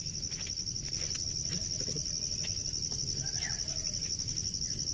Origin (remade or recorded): recorded